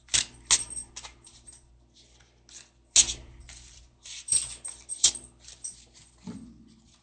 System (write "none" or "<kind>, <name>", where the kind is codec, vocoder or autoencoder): none